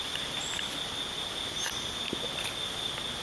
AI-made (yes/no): no